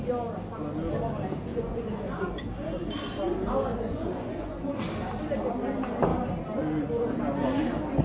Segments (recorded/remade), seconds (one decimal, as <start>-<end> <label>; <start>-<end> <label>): 0.0-1.5 recorded; 1.5-2.4 remade; 2.4-3.7 recorded; 3.7-4.7 remade; 4.7-8.0 recorded